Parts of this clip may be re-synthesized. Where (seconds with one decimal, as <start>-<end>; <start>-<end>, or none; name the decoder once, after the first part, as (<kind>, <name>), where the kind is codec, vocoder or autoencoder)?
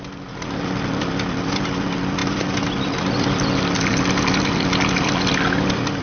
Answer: 0.0-6.0 (vocoder, BigVGAN v2)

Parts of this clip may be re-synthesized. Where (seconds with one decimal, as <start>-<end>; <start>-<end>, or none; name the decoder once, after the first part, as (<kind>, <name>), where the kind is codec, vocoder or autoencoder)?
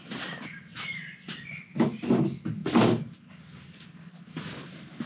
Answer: none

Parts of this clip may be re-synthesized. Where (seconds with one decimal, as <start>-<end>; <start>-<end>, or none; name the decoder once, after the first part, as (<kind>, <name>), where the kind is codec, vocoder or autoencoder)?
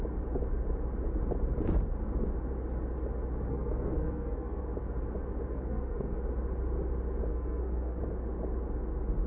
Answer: 3.5-4.6 (codec, SNAC); 5.5-6.2; 7.3-8.0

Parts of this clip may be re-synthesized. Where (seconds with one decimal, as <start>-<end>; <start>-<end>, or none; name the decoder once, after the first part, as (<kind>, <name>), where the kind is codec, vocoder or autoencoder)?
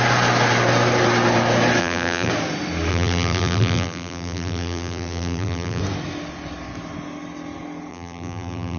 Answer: 1.8-2.3 (vocoder, BigVGAN v2); 2.9-5.8; 7.9-8.8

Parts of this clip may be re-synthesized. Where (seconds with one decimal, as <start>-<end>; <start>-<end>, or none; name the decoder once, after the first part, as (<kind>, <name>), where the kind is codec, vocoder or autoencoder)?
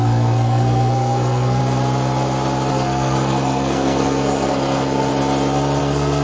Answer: 0.0-1.6 (codec, SNAC); 2.7-5.1; 5.8-6.2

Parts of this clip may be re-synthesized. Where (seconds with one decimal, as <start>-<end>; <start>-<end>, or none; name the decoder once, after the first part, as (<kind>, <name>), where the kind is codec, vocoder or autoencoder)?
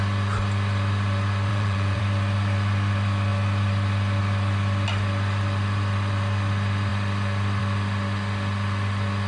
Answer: 1.5-2.0 (vocoder, Vocos)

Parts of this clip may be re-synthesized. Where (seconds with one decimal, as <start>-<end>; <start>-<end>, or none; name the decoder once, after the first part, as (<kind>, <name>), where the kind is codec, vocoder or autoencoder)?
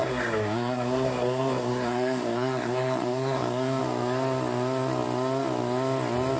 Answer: 0.0-3.8 (codec, SNAC)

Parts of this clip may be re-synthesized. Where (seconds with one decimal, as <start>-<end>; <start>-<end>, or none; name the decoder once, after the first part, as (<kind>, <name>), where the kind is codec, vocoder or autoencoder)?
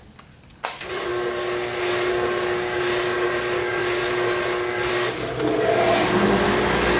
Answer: none